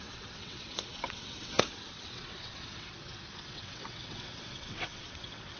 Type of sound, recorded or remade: remade